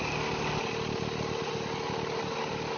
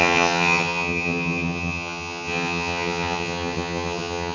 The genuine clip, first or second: first